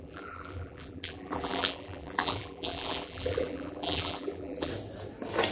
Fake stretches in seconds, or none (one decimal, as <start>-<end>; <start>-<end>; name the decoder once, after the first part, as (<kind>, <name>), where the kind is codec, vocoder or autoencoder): 0.0-4.7 (vocoder, BigVGAN v2)